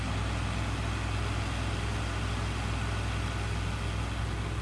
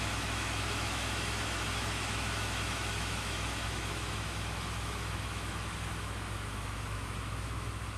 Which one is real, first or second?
first